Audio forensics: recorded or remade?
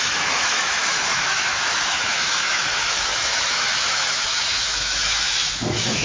remade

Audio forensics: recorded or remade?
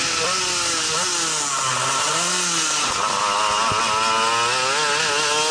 recorded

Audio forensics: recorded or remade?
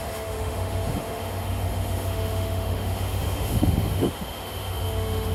remade